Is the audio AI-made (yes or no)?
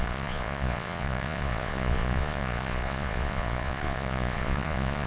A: yes